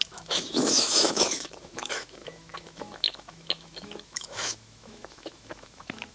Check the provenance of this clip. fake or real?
fake